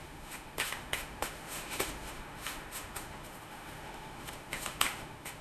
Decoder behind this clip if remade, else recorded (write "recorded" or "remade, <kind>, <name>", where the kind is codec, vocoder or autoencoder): remade, autoencoder, DAC-VAE